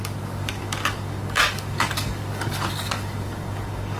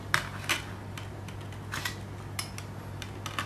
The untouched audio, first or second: second